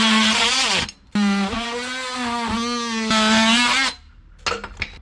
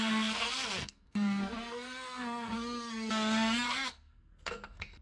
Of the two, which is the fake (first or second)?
second